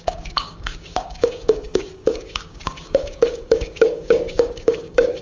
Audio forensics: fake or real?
fake